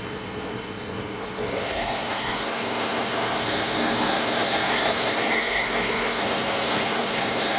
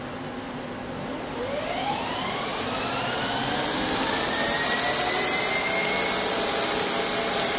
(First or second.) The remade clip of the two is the first